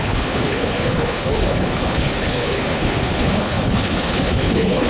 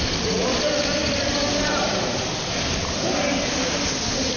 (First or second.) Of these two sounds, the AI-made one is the first